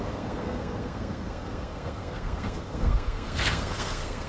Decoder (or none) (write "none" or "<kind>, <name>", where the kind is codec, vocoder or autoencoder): codec, SNAC